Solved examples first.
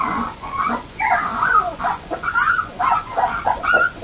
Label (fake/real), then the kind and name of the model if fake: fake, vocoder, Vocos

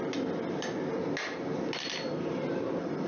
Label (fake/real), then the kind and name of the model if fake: real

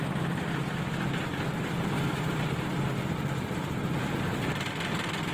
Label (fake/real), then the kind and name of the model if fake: real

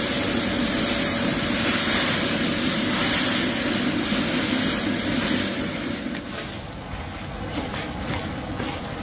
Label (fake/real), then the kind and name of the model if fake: real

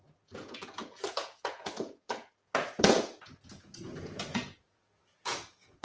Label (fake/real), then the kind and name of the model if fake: fake, vocoder, Vocos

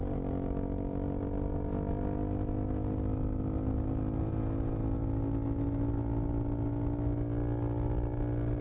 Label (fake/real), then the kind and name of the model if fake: real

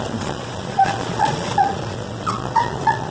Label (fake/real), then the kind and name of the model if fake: fake, vocoder, Vocos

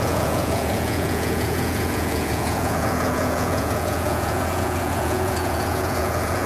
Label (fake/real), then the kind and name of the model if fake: fake, vocoder, Vocos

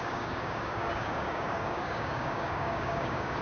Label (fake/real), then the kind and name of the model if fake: fake, codec, DAC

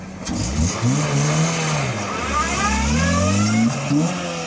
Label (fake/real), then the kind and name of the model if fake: real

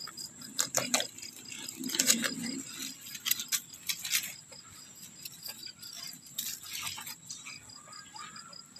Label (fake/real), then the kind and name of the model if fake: real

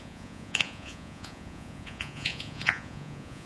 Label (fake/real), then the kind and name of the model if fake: fake, vocoder, Vocos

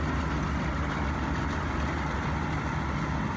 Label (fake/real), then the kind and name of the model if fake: real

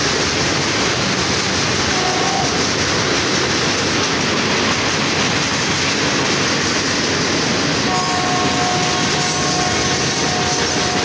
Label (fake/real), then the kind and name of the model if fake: real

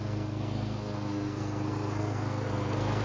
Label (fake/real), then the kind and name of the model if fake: fake, codec, SNAC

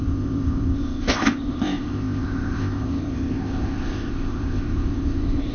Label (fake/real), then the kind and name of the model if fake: fake, codec, ZipCodec